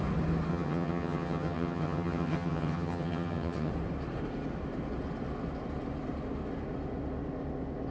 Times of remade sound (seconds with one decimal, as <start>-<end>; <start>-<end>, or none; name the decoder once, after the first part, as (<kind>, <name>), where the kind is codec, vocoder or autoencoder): 0.5-3.7 (vocoder, HiFi-GAN)